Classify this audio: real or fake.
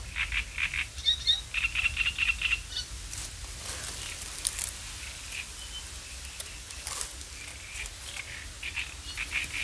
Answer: real